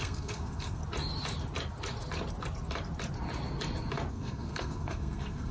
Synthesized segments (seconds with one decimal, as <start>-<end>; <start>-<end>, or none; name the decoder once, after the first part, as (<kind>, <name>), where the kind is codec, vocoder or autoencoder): 0.0-0.8 (codec, SNAC); 4.1-5.5